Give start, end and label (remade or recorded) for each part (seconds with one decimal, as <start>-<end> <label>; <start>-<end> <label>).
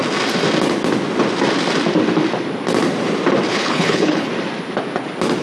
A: 0.0-3.5 recorded; 3.5-4.3 remade; 4.3-5.4 recorded